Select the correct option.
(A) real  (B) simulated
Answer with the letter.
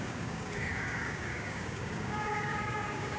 B